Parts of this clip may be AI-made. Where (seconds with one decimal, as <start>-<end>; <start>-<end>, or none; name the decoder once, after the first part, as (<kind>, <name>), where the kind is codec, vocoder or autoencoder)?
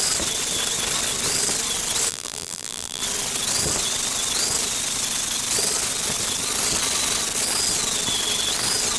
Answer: 2.1-3.0 (vocoder, BigVGAN v2)